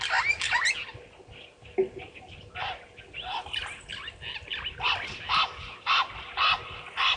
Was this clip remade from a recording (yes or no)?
no